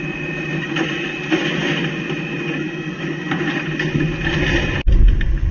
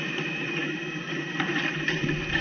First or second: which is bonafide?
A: first